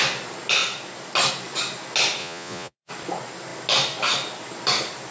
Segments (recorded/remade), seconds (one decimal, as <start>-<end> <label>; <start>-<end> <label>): 0.0-2.2 recorded; 2.2-2.9 remade; 2.9-5.1 recorded